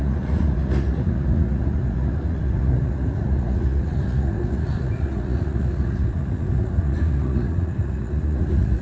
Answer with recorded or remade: remade